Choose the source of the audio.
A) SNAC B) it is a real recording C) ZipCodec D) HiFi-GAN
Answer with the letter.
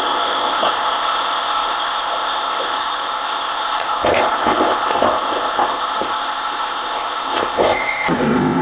C